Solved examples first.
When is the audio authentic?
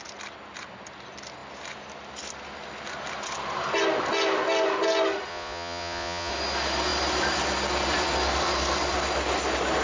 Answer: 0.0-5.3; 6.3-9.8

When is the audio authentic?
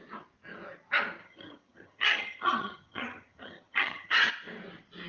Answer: 0.0-1.2; 4.3-5.1